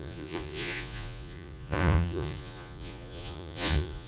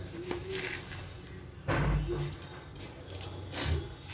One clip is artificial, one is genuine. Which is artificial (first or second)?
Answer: first